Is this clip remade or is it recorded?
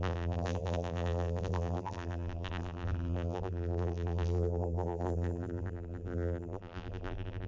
remade